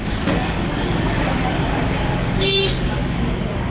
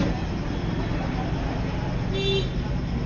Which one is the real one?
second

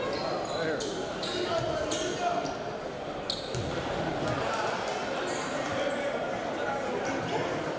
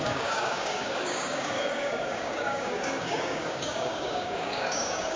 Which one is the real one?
first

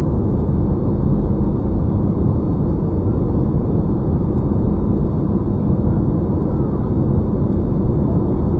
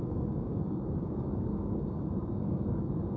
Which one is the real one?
first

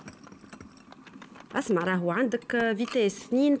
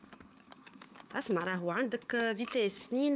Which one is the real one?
first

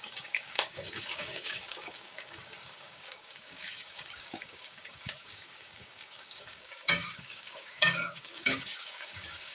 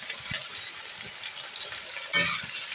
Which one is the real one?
second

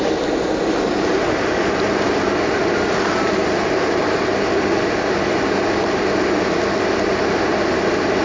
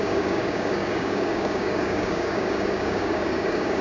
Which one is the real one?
first